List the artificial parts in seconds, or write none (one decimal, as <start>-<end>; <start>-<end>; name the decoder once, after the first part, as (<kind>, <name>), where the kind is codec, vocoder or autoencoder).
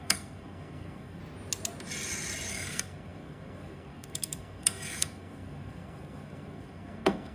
0.0-1.2 (codec, SNAC); 2.5-7.3